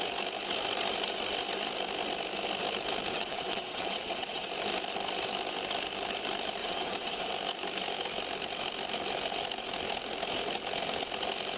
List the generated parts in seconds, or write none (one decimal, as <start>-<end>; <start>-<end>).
3.1-4.5; 6.6-7.3